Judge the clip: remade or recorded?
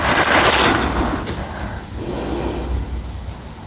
recorded